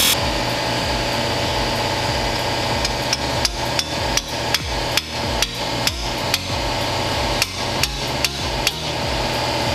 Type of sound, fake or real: real